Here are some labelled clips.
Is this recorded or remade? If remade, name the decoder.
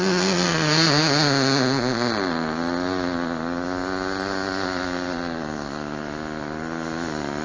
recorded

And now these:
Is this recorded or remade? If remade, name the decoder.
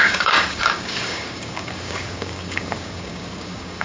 remade, codec, DAC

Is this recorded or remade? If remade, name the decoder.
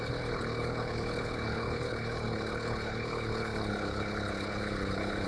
remade, codec, HILCodec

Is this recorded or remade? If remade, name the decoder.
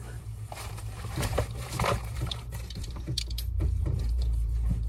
remade, vocoder, BigVGAN v2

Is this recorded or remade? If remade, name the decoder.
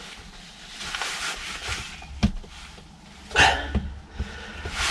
recorded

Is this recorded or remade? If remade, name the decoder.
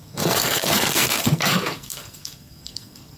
remade, codec, SNAC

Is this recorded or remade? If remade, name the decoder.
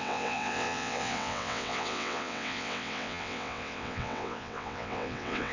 remade, vocoder, WaveNeXt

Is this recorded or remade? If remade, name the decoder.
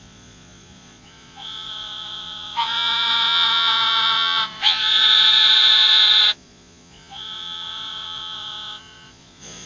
remade, vocoder, Vocos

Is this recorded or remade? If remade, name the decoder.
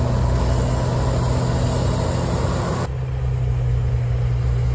recorded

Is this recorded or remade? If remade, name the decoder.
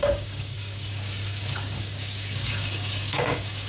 remade, codec, DAC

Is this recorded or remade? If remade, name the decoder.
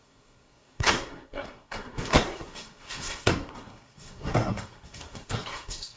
remade, codec, SNAC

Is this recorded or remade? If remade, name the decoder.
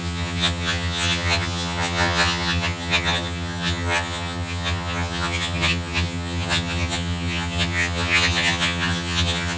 remade, vocoder, HiFi-GAN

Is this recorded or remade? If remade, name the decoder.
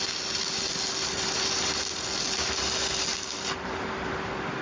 recorded